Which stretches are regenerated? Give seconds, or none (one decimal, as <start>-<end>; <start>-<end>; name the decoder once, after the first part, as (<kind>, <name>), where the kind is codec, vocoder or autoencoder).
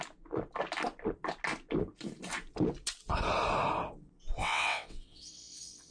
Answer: 4.4-5.9 (vocoder, WaveNeXt)